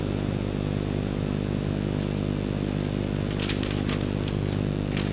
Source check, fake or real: real